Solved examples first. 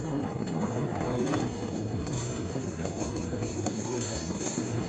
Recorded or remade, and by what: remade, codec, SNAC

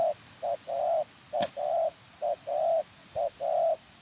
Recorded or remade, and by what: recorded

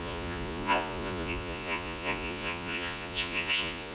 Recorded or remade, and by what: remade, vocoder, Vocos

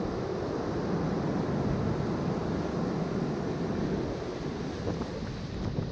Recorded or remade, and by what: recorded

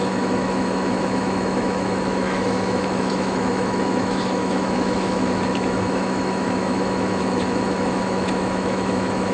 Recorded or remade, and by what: remade, autoencoder, DAC-VAE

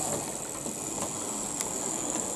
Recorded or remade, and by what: recorded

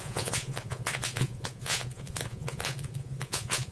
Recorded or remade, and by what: remade, vocoder, Vocos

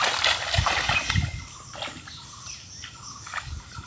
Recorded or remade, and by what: recorded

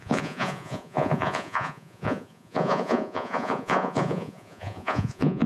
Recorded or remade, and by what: remade, vocoder, Vocos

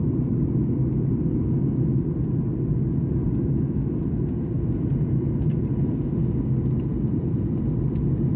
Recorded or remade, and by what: recorded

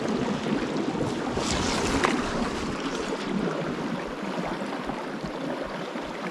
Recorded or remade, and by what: recorded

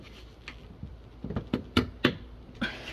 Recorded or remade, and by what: recorded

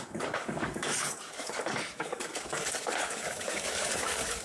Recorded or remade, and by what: remade, codec, DAC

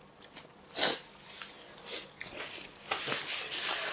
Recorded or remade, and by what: recorded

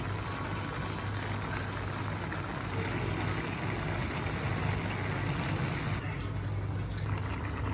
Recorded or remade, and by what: recorded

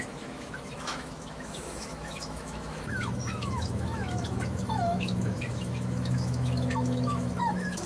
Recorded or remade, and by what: remade, autoencoder, DAC-VAE